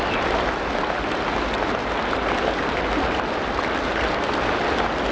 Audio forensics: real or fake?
real